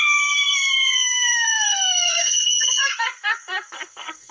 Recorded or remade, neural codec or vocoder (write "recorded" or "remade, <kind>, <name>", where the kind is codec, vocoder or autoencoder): remade, codec, SNAC